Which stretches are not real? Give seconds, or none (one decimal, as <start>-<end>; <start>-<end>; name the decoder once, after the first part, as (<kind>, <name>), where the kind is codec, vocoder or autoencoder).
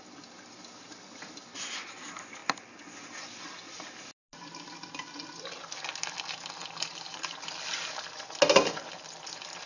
none